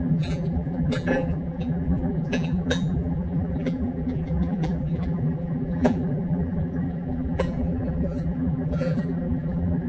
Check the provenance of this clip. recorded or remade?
remade